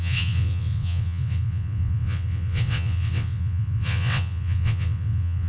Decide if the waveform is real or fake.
fake